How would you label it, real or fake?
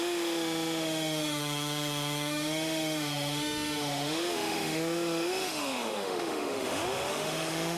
fake